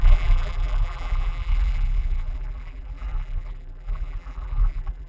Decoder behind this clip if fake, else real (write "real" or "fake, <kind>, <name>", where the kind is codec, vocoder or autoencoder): fake, vocoder, BigVGAN v2